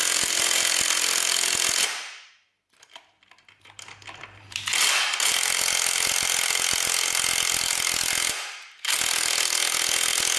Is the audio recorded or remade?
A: recorded